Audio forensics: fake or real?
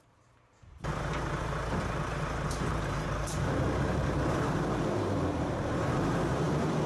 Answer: fake